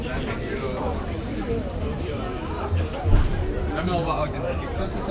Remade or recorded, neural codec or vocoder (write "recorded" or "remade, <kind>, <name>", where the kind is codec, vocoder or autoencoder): remade, vocoder, BigVGAN v2